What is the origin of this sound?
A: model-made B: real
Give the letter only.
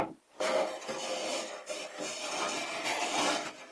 B